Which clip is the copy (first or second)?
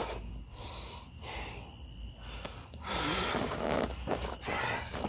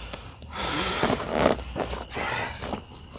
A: second